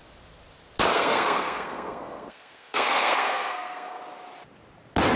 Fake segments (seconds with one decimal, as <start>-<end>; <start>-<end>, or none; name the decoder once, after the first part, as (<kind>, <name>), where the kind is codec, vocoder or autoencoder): 0.9-4.0 (codec, SNAC)